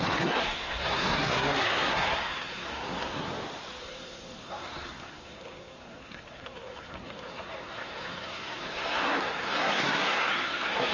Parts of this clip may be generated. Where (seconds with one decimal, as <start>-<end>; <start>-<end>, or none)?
0.0-3.3; 3.8-10.9